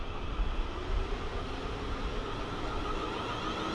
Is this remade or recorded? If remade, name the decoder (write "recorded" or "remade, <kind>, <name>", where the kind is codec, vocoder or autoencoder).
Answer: recorded